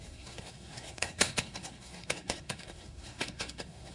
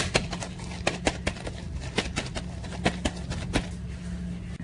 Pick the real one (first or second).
second